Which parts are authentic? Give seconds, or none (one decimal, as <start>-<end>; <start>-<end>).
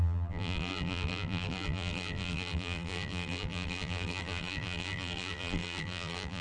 none